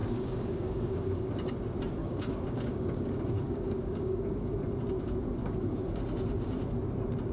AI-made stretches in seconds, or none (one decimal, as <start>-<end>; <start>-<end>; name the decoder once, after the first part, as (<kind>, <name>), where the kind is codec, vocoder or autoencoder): 0.0-1.5 (codec, DAC); 2.0-4.5; 5.4-6.0